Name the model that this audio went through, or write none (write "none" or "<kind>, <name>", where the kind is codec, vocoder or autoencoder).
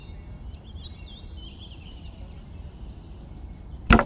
none